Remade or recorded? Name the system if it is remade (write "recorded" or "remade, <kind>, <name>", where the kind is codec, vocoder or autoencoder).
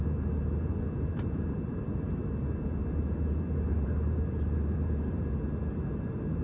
remade, vocoder, BigVGAN v2